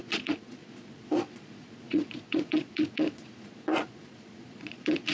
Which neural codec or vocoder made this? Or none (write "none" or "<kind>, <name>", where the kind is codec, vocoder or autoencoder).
vocoder, Vocos